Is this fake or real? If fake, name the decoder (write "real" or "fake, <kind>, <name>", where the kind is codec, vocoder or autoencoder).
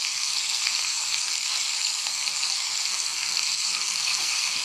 fake, codec, SNAC